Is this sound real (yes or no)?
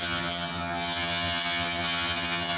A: no